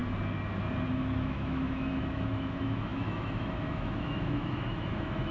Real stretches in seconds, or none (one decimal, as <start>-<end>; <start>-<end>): 0.0-0.9